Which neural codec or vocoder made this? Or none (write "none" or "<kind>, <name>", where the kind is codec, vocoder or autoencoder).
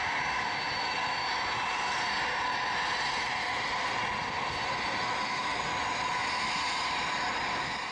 none